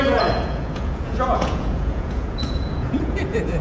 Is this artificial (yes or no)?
yes